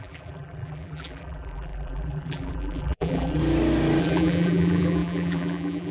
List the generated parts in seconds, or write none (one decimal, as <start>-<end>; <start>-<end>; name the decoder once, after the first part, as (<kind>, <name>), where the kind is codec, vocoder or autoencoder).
0.0-3.4 (vocoder, BigVGAN v2); 4.0-5.9